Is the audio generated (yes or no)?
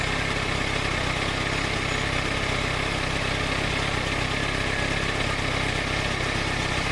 no